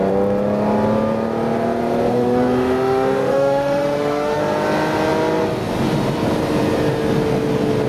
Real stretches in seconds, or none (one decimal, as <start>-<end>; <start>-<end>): 0.0-2.1; 4.4-7.9